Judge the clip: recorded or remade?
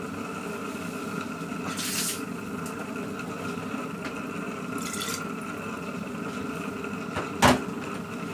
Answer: recorded